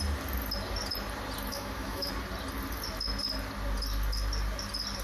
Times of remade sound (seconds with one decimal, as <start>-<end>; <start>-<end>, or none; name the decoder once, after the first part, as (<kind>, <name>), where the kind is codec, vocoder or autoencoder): 1.5-2.1 (autoencoder, DAC-VAE)